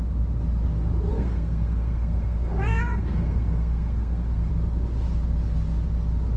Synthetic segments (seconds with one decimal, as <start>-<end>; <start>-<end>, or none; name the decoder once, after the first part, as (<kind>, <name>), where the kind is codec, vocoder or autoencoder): 1.1-4.5 (codec, SNAC)